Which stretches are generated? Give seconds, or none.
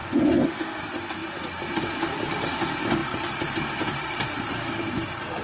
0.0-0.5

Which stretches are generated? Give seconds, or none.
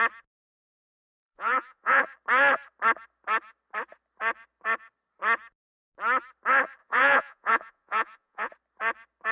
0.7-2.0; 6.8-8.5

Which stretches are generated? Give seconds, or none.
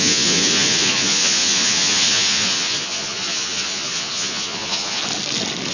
0.0-5.0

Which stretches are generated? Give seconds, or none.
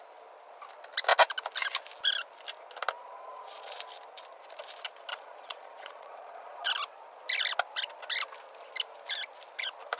3.0-3.8; 5.1-6.7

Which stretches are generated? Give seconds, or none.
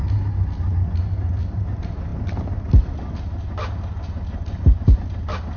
none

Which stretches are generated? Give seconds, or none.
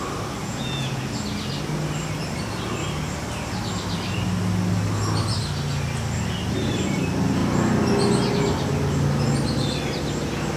0.4-1.1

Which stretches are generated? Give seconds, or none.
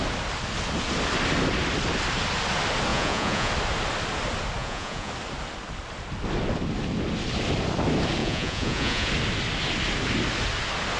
2.9-3.5; 4.6-5.1; 8.2-9.1